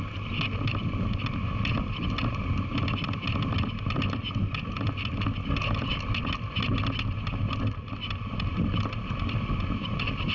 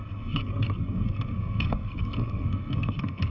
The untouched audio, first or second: first